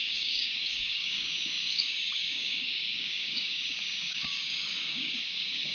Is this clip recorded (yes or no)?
no